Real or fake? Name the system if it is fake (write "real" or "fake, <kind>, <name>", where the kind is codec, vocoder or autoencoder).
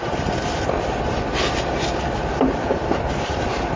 real